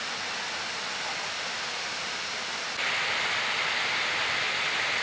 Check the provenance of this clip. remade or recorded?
recorded